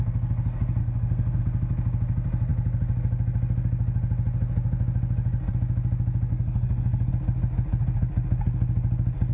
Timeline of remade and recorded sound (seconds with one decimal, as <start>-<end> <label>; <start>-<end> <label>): 0.0-0.8 recorded; 0.8-1.4 remade; 1.4-6.3 recorded; 6.3-7.1 remade; 7.1-9.3 recorded